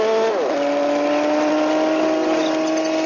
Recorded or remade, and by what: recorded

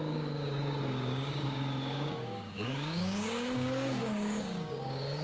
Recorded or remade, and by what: remade, codec, DAC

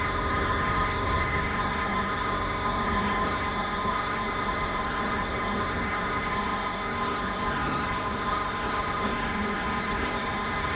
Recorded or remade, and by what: remade, codec, SNAC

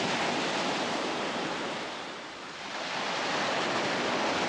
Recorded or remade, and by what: recorded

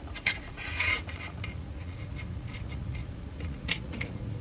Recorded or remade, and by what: remade, vocoder, Vocos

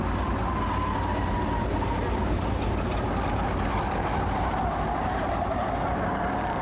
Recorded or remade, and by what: recorded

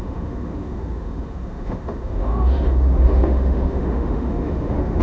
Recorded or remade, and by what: remade, autoencoder, DAC-VAE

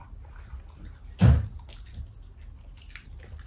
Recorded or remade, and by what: recorded